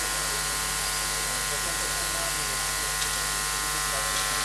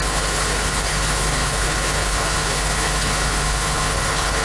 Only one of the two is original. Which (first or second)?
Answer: first